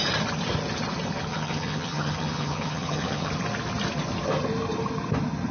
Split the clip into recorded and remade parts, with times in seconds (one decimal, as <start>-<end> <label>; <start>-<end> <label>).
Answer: 0.0-1.3 recorded; 1.3-3.3 remade; 3.3-5.5 recorded